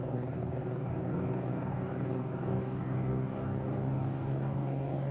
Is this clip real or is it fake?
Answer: fake